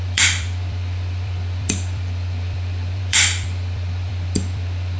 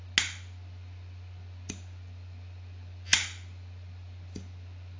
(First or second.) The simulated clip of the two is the first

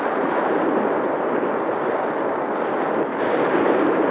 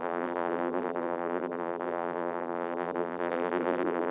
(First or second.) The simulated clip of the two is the second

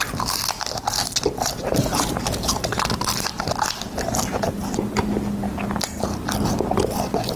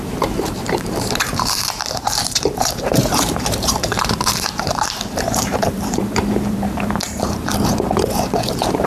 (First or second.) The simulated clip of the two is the second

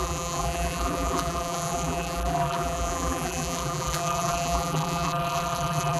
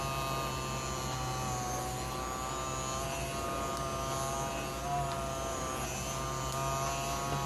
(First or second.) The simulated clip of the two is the first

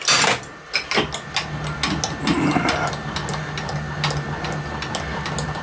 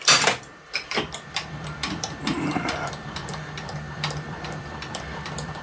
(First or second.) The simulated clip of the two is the second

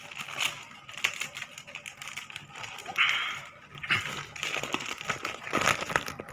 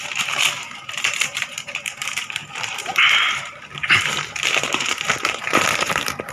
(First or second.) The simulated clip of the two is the second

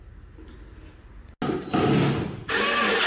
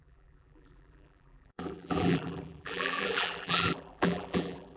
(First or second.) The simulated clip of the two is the second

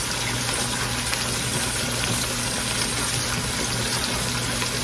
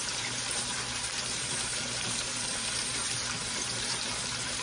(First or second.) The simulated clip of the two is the second